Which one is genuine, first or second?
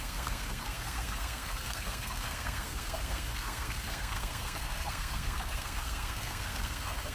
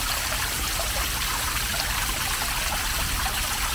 second